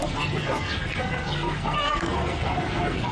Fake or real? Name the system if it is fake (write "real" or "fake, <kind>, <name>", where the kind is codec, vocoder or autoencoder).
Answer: fake, codec, SNAC